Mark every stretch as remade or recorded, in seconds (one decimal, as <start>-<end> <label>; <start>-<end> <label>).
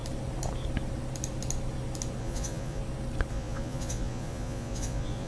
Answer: 0.0-2.2 recorded; 2.2-2.8 remade; 2.8-3.3 recorded; 3.3-5.3 remade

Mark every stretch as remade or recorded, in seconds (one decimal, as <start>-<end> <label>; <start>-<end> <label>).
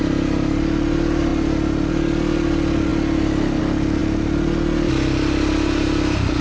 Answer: 0.0-6.4 recorded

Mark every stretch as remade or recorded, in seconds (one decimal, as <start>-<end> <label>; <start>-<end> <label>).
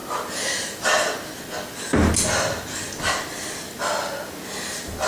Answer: 0.0-5.1 recorded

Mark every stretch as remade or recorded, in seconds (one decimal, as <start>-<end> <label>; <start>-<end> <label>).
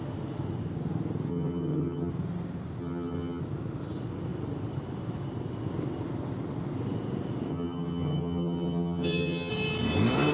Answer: 0.0-1.3 recorded; 1.3-2.1 remade; 2.1-2.8 recorded; 2.8-3.4 remade; 3.4-7.5 recorded; 7.5-9.5 remade; 9.5-10.3 recorded